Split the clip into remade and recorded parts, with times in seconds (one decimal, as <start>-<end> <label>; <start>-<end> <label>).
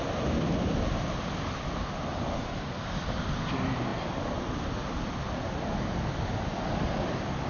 0.0-7.5 recorded